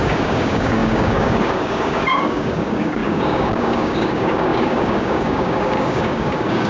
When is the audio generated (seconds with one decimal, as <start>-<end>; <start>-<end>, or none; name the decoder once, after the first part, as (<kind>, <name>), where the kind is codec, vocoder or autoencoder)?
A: 0.0-6.7 (codec, DAC)